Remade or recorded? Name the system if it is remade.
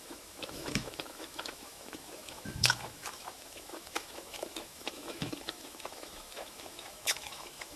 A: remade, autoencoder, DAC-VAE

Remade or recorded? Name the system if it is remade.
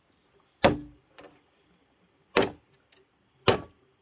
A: recorded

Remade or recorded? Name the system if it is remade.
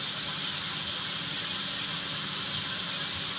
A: recorded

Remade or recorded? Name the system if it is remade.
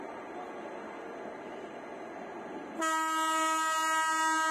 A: recorded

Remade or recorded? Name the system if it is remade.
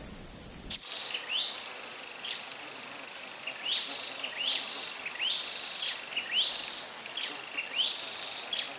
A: recorded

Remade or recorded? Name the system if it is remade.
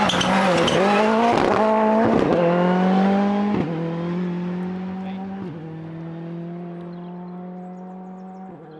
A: recorded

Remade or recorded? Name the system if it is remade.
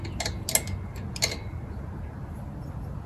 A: recorded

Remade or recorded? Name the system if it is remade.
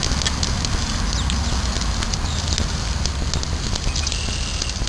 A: recorded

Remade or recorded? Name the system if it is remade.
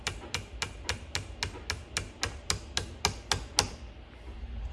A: recorded